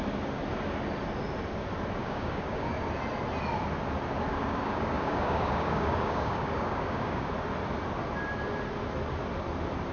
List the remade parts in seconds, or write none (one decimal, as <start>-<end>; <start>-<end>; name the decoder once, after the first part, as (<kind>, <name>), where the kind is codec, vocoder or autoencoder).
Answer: 2.0-2.7 (codec, DAC); 4.3-7.3